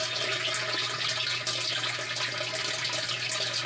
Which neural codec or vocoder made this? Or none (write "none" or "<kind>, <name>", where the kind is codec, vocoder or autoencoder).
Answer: none